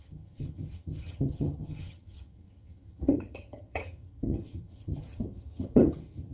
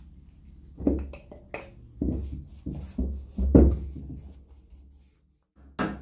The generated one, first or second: first